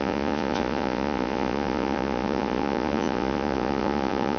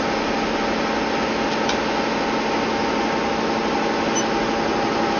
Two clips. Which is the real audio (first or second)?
second